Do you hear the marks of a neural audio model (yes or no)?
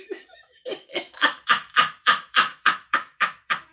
yes